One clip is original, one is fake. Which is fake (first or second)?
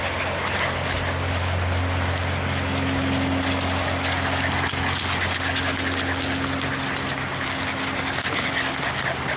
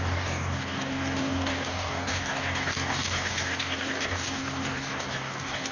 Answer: second